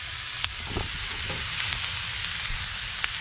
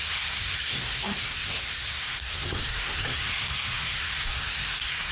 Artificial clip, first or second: second